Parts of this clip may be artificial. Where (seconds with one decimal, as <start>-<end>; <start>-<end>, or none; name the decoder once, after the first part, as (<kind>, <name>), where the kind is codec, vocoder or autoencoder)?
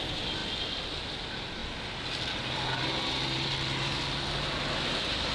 none